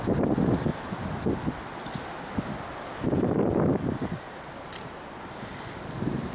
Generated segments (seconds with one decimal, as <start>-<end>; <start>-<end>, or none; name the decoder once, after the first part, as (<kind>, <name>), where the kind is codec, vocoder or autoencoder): none